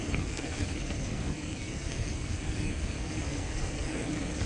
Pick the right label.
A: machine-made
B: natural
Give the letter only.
A